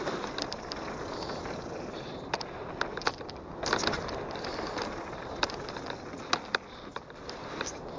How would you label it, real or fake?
real